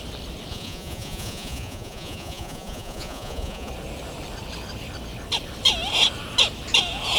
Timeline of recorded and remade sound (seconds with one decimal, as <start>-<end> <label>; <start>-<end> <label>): 0.0-0.5 recorded; 0.5-3.7 remade; 3.7-7.2 recorded